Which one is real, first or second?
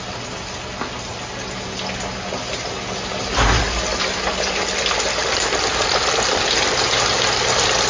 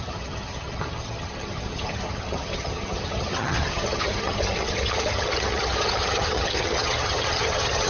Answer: first